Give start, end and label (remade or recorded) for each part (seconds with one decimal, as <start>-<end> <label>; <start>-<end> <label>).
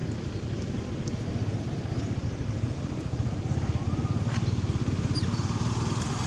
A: 0.0-0.9 remade; 0.9-1.3 recorded; 1.3-4.9 remade; 4.9-6.3 recorded